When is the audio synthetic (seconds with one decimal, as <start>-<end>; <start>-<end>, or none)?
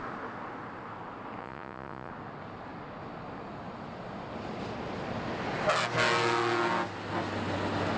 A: 1.4-2.1